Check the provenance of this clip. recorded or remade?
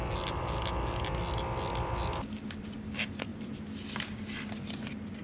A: recorded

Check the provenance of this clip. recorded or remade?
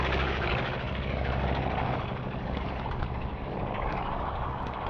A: remade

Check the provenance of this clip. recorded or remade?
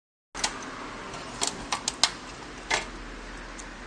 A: recorded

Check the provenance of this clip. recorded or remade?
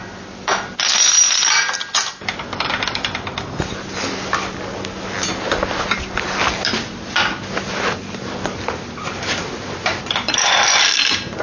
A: recorded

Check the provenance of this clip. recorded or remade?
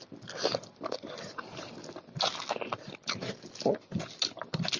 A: recorded